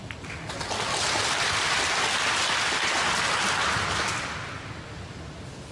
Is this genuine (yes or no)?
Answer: yes